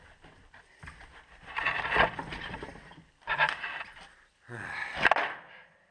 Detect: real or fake fake